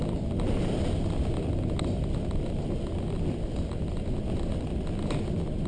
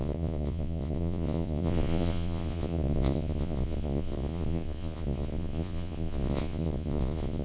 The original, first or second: first